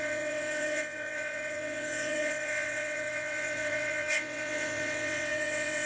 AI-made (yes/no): yes